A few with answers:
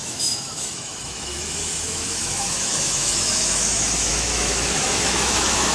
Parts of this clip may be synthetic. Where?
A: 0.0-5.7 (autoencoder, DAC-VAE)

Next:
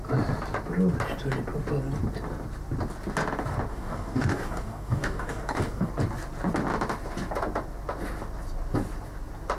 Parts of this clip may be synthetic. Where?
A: 3.7-5.9 (codec, DAC)

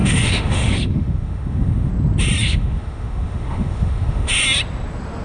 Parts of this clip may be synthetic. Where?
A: 0.0-1.9 (autoencoder, DAC-VAE); 2.4-4.3

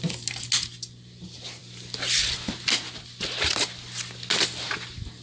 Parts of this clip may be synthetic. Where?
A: none

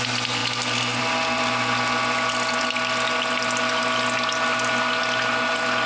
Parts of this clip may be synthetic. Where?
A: none

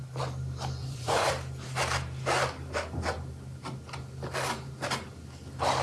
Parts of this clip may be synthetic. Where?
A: 0.8-1.3 (vocoder, Vocos)